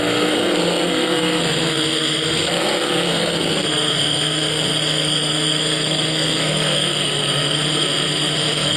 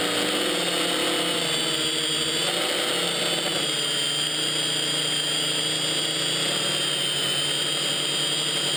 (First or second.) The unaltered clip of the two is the second